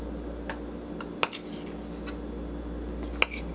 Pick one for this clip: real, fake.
real